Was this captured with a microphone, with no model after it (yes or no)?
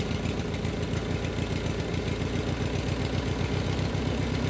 yes